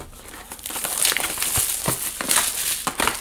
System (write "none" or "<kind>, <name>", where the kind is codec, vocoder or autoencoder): none